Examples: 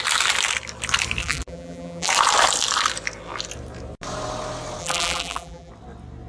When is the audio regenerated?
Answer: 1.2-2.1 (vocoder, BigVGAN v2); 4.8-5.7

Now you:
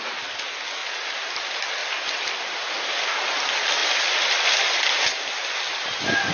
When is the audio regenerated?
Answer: 1.8-2.6 (vocoder, BigVGAN v2); 3.8-4.3

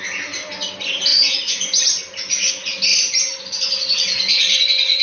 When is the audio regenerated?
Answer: 1.1-2.5 (vocoder, BigVGAN v2); 2.9-4.6

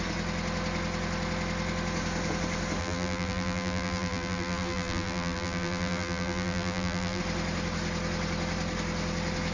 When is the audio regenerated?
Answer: 2.8-7.2 (vocoder, BigVGAN v2)